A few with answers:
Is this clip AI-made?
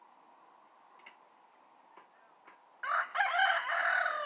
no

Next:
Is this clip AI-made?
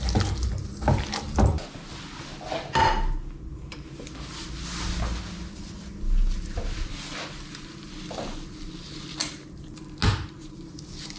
no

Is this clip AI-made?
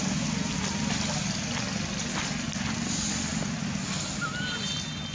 no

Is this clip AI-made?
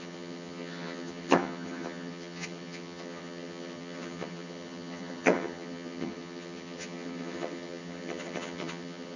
yes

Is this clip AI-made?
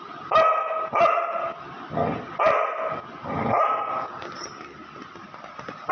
no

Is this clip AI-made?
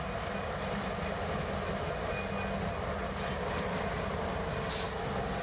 no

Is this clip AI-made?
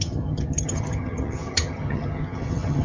yes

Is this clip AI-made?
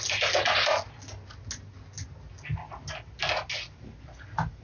no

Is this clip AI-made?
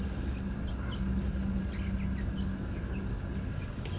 no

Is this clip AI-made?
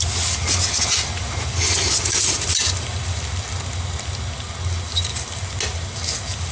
no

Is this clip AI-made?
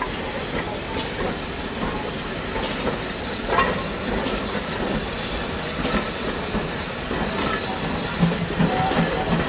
no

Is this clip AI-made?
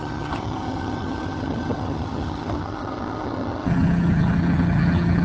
yes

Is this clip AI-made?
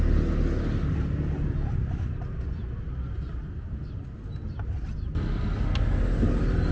no